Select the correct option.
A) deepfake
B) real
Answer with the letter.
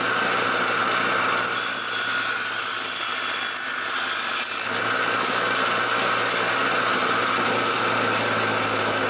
B